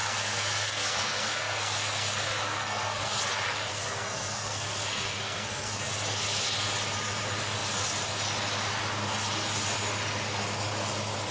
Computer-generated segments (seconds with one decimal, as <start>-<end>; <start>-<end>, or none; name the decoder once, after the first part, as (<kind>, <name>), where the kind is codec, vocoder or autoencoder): 0.0-3.2 (codec, SNAC); 3.7-5.9